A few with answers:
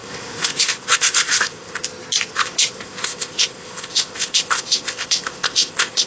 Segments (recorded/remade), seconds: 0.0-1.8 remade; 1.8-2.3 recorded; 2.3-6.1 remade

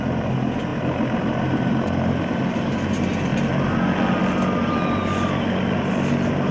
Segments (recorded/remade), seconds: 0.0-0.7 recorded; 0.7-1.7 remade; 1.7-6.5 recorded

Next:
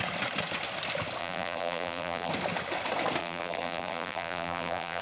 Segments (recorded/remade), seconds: 0.0-1.2 recorded; 1.2-2.3 remade; 2.3-3.2 recorded; 3.2-5.0 remade